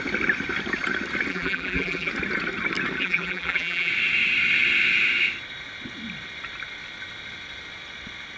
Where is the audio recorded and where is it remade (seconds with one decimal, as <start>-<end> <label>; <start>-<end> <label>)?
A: 0.0-1.3 recorded; 1.3-2.1 remade; 2.1-3.0 recorded; 3.0-3.9 remade; 3.9-8.4 recorded